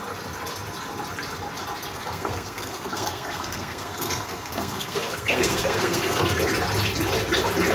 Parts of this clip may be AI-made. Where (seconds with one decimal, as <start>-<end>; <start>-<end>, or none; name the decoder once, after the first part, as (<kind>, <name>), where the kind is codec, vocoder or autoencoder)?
1.9-6.4 (codec, SNAC)